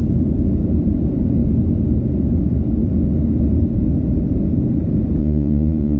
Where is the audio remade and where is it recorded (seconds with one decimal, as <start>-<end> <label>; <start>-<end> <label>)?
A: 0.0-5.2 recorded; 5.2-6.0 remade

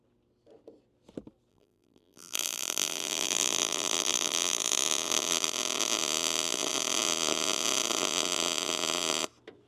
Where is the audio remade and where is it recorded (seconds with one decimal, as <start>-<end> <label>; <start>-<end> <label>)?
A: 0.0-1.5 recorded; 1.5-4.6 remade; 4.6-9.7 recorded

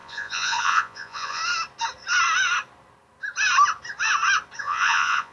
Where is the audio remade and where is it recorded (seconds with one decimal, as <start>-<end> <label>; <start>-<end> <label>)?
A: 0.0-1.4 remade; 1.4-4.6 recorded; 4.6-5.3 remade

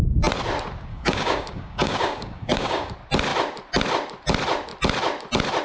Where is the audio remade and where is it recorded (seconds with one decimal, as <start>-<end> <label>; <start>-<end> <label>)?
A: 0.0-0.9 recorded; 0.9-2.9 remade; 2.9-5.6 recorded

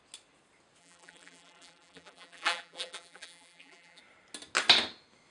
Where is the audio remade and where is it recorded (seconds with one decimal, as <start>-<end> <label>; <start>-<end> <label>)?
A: 0.0-0.8 recorded; 0.8-4.0 remade; 4.0-5.3 recorded